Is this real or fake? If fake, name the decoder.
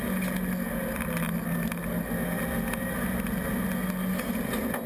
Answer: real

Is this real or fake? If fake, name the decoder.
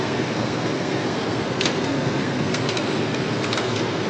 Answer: fake, codec, SNAC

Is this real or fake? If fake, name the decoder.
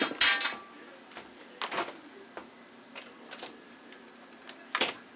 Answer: real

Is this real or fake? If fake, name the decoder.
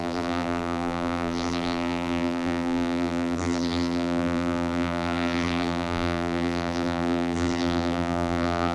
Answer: fake, vocoder, BigVGAN v2